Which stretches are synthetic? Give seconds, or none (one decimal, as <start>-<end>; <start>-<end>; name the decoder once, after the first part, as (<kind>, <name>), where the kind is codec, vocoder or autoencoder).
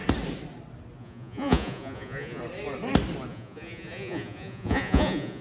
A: 1.0-2.4 (vocoder, Vocos); 3.3-5.4